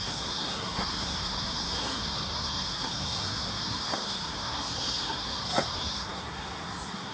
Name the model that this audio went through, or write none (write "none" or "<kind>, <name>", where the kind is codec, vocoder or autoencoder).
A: codec, SNAC